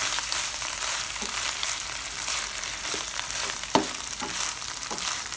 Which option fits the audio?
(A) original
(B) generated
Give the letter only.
B